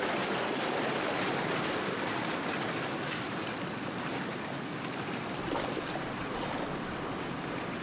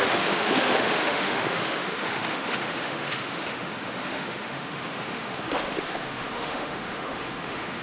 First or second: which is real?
first